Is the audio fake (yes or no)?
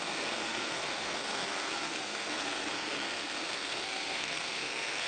yes